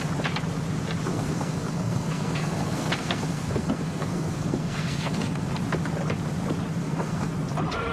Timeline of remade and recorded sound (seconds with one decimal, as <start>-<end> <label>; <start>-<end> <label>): 0.0-1.1 recorded; 1.1-5.5 remade; 5.5-6.8 recorded; 6.8-7.3 remade; 7.3-7.9 recorded